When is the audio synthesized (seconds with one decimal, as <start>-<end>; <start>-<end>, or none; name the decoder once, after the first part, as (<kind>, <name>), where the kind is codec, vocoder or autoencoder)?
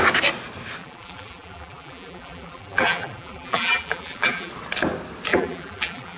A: 0.8-4.5 (vocoder, BigVGAN v2); 5.3-6.2